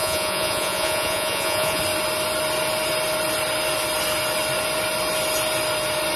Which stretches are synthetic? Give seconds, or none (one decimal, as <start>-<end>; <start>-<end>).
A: 0.0-1.8